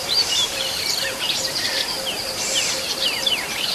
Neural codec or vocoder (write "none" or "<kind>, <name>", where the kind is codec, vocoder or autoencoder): vocoder, BigVGAN v2